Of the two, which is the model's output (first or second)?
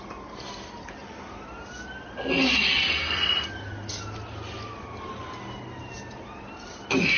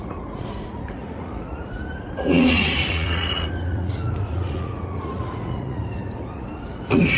second